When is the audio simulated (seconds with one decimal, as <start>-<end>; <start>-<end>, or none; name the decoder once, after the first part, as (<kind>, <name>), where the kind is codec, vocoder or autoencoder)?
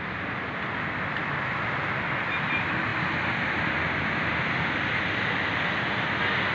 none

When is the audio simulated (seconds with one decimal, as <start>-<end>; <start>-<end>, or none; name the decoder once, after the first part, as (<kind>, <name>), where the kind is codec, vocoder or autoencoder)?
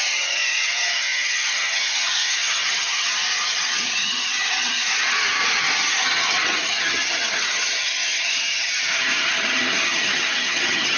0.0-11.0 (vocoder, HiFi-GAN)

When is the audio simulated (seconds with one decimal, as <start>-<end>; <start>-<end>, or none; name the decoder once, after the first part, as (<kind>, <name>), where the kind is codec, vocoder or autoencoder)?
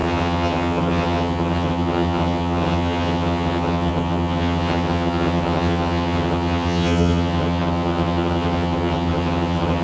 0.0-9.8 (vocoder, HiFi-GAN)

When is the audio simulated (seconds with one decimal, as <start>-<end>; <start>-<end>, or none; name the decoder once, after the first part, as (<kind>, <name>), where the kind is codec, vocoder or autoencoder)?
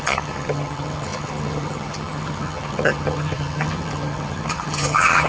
0.0-5.3 (vocoder, HiFi-GAN)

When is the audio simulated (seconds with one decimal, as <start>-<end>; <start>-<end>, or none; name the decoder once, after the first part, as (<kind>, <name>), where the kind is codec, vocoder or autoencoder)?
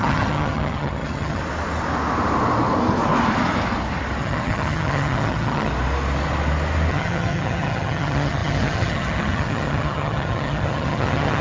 0.0-1.4 (vocoder, HiFi-GAN); 4.2-5.7; 6.9-11.4